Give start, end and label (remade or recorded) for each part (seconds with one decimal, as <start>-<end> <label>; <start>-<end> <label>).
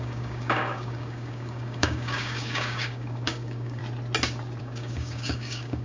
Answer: 0.0-3.8 remade; 3.8-4.6 recorded; 4.6-5.8 remade